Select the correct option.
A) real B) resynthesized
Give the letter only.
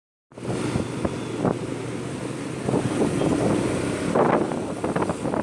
A